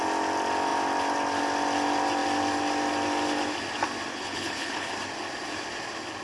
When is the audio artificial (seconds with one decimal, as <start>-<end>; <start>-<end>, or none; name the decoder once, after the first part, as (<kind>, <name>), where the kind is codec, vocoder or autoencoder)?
4.1-4.9 (codec, HILCodec)